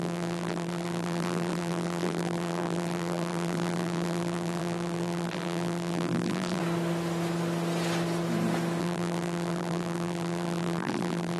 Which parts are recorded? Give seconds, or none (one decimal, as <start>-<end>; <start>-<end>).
6.6-8.8

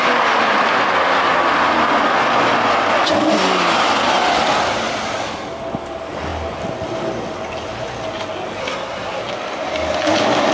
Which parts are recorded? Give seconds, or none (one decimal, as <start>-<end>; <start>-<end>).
0.0-8.6; 9.2-10.5

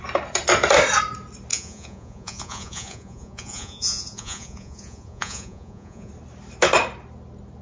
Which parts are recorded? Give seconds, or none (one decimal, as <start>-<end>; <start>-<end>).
0.0-1.5; 6.1-7.6

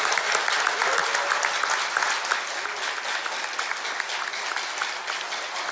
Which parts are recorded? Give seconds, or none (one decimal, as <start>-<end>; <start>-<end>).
0.0-5.7

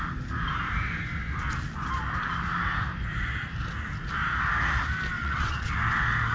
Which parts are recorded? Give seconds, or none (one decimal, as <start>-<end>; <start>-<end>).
0.0-5.2; 5.7-6.3

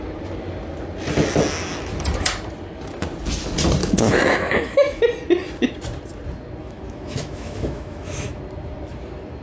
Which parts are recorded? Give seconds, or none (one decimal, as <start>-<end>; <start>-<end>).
0.0-3.8; 5.0-6.6; 8.4-9.4

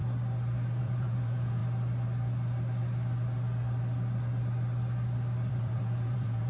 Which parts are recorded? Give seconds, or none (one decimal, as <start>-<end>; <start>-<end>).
0.0-0.8; 1.6-5.5